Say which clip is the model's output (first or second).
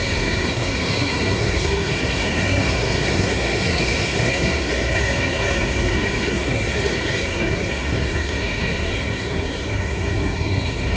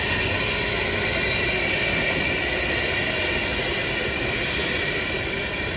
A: first